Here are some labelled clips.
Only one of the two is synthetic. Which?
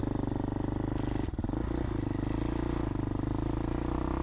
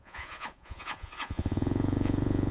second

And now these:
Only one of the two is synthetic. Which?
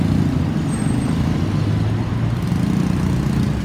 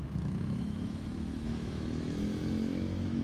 second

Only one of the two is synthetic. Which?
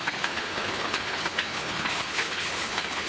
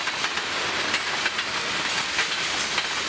first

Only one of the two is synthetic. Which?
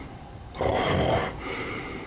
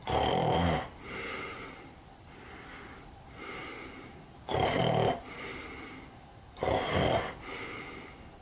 first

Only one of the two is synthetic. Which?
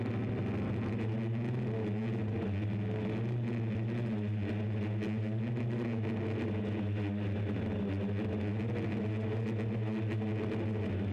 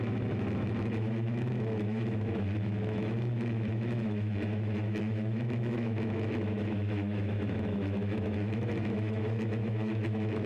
second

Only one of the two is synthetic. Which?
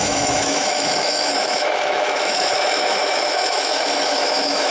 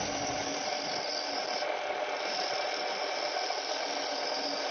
first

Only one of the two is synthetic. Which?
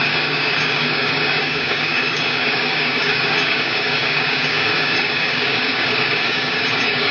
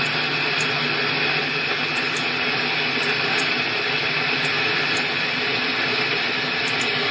first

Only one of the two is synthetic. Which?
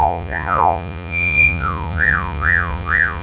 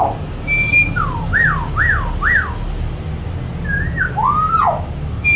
first